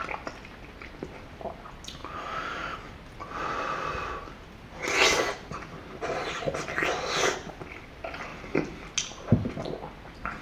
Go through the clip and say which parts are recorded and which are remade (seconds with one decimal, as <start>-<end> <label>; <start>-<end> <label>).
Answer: 0.0-10.4 recorded